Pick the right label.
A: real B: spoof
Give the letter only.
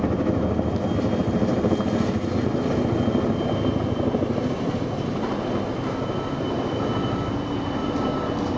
A